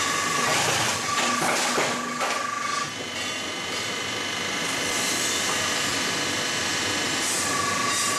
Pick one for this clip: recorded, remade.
recorded